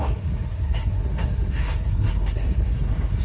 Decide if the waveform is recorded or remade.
remade